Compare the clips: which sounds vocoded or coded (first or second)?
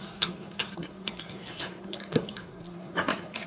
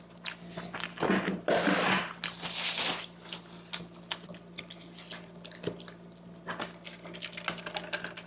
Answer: first